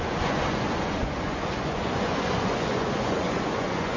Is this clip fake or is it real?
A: fake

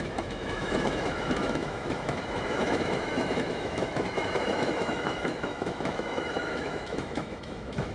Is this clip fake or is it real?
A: fake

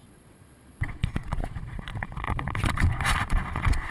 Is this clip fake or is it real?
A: fake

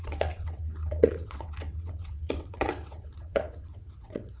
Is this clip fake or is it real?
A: fake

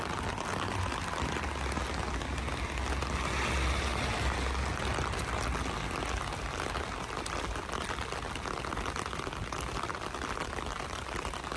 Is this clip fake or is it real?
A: real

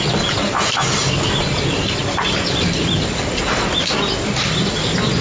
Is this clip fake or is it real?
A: real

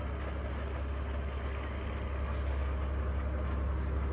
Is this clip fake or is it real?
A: real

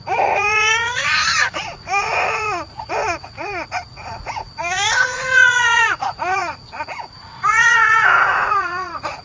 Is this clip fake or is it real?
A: fake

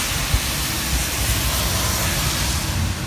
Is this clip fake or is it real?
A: real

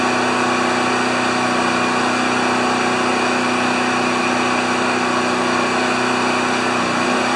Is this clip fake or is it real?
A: real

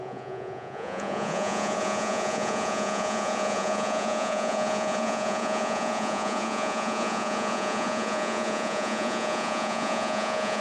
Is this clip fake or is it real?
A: fake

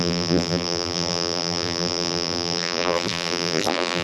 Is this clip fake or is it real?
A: fake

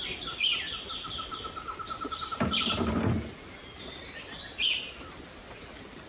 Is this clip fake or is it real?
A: real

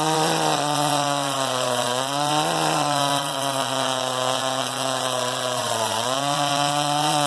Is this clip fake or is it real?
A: fake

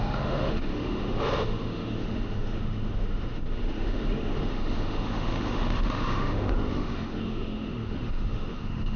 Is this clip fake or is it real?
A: fake